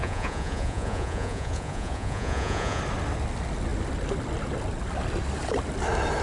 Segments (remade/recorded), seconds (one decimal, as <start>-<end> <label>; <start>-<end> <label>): 0.0-2.8 remade; 2.8-6.2 recorded